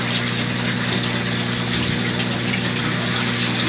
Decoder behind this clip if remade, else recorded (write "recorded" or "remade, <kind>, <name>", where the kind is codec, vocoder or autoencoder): recorded